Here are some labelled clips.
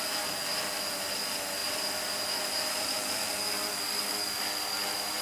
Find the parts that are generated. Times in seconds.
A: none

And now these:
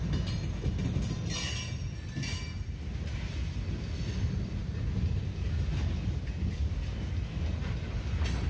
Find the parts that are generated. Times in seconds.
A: none

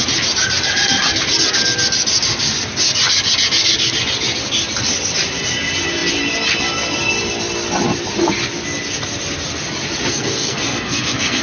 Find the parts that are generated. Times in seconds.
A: 10.1-11.4 (codec, SNAC)

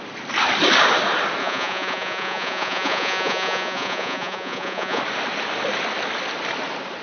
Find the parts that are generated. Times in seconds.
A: 1.4-5.0 (vocoder, Vocos)

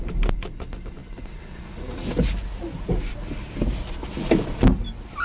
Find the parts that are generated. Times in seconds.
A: none